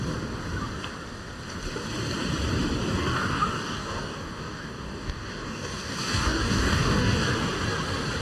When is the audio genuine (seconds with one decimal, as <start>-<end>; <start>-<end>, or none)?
0.0-3.0; 7.3-8.2